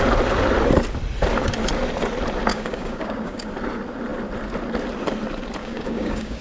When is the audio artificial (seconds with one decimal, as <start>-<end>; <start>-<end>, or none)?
2.5-3.5; 5.6-6.4